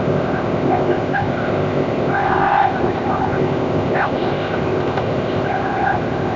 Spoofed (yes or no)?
yes